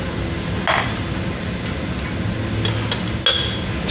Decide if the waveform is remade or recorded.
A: recorded